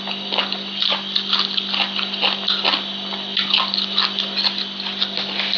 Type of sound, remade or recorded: recorded